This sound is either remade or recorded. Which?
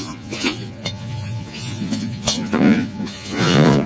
remade